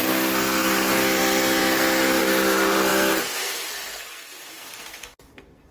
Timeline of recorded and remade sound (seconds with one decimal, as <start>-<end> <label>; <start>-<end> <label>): 0.0-5.7 remade